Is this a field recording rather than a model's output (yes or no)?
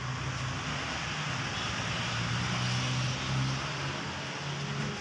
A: yes